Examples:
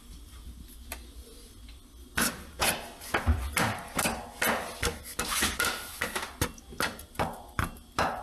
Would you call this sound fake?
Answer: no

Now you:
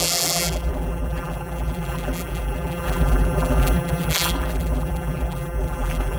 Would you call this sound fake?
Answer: yes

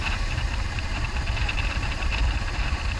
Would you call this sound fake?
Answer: yes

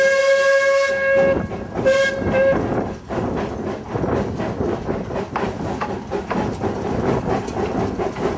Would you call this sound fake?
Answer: no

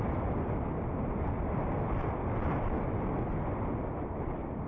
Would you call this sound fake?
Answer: no